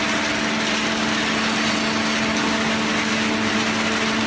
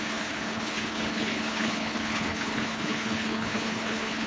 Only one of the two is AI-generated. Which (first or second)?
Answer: second